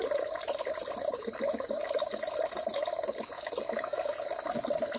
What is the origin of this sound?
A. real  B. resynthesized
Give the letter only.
A